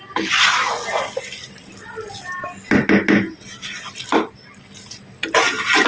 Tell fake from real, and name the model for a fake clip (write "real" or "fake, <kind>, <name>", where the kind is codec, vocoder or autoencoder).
real